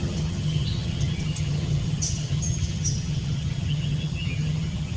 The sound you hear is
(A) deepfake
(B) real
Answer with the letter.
A